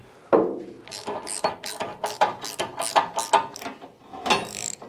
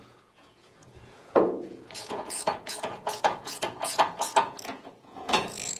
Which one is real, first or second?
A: first